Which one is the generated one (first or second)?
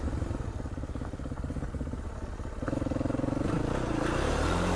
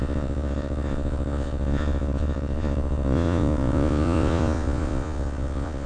second